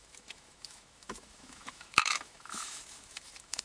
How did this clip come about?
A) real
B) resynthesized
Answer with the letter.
B